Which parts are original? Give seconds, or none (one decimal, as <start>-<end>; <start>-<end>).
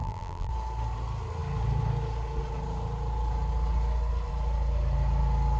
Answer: 0.5-5.6